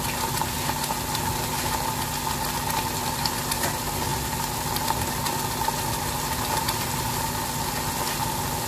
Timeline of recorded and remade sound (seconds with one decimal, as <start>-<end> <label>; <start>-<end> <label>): 0.0-8.7 recorded